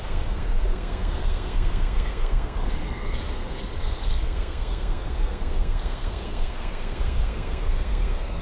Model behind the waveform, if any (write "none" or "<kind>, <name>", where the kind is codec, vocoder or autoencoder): codec, SNAC